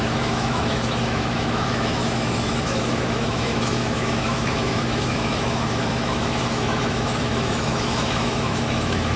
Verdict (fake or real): fake